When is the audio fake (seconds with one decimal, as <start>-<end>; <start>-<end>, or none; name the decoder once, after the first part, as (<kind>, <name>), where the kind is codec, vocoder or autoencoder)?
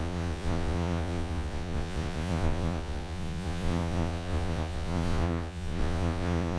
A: 0.0-6.6 (vocoder, Vocos)